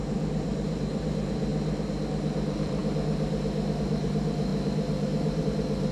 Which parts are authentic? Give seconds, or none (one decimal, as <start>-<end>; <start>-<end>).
1.5-2.1; 2.8-3.8